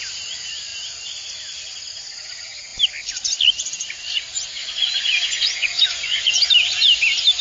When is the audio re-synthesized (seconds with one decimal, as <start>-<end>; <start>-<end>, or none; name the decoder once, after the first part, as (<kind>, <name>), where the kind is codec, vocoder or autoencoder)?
4.6-6.3 (vocoder, Vocos)